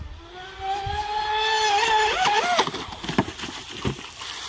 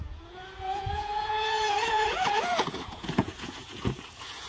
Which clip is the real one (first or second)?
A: first